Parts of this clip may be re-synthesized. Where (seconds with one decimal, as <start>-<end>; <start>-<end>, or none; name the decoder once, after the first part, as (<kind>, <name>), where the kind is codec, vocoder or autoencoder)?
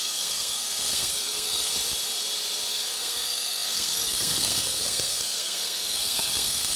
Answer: 0.0-1.7 (codec, SNAC); 2.7-6.8